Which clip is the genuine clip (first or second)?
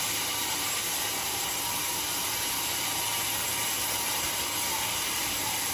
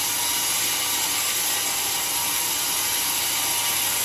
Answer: second